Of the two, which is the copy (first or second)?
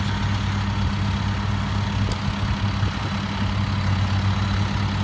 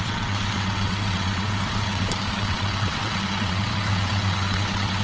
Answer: second